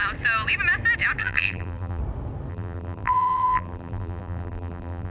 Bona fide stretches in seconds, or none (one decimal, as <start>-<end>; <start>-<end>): 0.0-1.2; 2.0-2.5